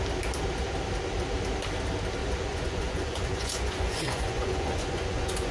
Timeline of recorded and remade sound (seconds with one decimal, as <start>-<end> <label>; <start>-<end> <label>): 0.0-2.2 recorded; 2.2-5.5 remade